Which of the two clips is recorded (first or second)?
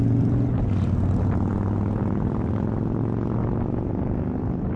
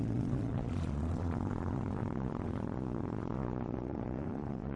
first